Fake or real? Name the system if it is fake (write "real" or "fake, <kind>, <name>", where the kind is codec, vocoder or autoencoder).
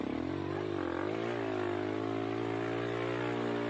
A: real